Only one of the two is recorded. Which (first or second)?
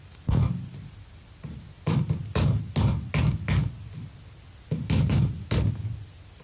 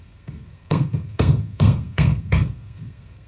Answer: first